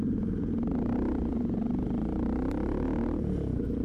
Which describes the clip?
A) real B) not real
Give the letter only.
A